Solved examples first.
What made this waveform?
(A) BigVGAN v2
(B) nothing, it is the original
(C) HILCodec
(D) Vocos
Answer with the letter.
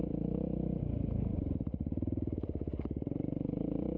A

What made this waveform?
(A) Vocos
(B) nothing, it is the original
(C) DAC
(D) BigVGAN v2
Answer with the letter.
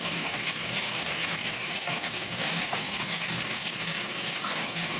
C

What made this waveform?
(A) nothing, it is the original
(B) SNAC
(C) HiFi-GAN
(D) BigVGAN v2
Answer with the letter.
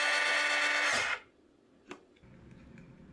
A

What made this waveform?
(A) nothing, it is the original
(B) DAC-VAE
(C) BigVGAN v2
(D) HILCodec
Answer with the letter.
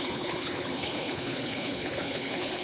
D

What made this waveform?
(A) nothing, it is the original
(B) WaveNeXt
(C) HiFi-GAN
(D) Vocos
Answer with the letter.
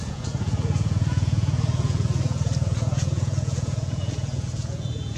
D